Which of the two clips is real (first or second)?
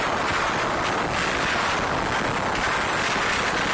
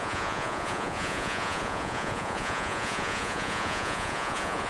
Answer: first